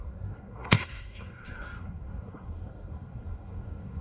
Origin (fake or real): fake